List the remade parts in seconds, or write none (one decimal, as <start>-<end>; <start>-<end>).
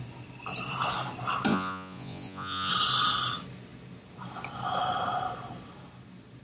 1.5-2.7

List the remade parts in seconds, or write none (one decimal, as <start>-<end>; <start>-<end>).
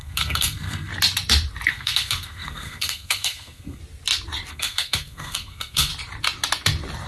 0.0-0.9; 1.7-3.8; 4.5-5.9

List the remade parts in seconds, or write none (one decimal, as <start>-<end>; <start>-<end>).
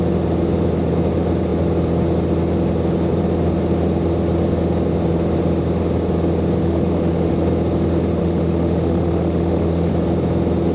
6.6-7.3; 8.2-9.9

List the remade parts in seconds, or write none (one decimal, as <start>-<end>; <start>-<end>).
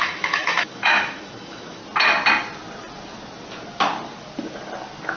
0.0-1.8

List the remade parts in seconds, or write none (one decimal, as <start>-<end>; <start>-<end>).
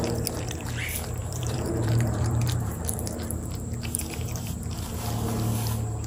1.2-4.9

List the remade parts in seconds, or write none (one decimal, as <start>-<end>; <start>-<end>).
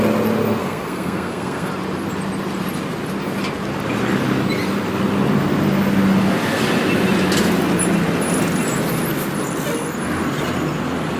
0.6-1.7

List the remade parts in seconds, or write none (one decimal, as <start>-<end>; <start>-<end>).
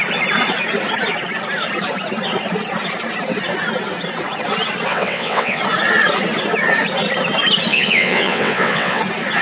4.9-5.6; 7.7-9.0